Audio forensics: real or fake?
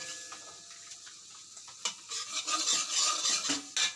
real